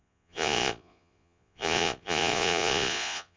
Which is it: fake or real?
fake